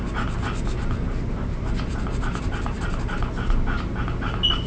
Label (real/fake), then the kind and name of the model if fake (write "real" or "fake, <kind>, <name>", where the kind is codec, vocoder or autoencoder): real